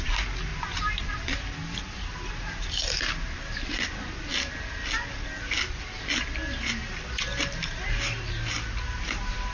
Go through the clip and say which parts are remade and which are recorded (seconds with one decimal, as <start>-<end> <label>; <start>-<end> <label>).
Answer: 0.0-0.5 recorded; 0.5-4.3 remade; 4.3-6.8 recorded; 6.8-7.8 remade; 7.8-9.5 recorded